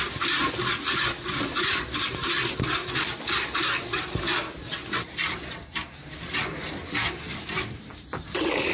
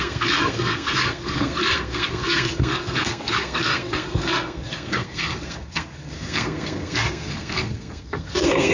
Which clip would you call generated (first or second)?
second